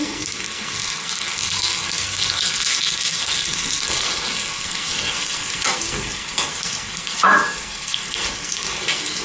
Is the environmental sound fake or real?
fake